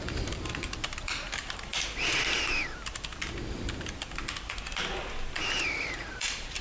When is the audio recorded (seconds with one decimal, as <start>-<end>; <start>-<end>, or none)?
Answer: 1.7-5.7

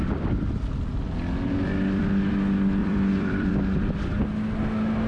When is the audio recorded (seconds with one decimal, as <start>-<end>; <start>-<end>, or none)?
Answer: 0.0-2.8; 3.5-5.1

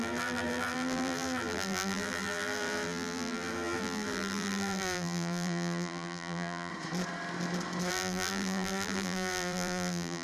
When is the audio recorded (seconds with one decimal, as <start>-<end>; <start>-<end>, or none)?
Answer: 6.7-7.9

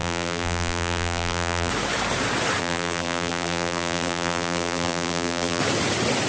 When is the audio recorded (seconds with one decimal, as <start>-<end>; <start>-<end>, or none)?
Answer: 1.7-2.6; 5.6-6.3